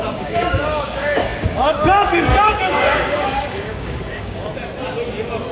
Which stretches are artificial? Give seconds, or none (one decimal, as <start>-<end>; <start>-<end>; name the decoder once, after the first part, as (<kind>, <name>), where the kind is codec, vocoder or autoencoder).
0.0-4.5 (codec, DAC)